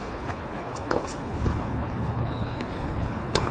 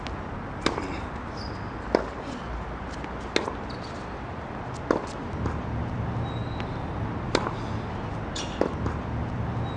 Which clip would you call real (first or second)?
second